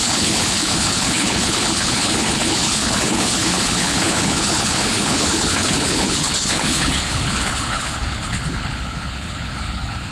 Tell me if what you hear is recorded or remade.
remade